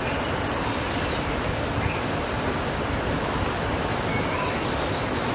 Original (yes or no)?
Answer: yes